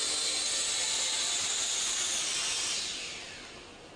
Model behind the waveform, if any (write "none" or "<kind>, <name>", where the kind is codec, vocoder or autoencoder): none